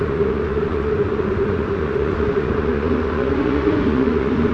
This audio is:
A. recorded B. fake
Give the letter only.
B